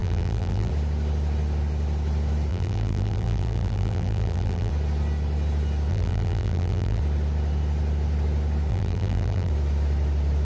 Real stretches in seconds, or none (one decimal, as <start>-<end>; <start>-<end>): 0.7-2.5; 4.7-5.9; 7.0-8.7; 9.5-10.4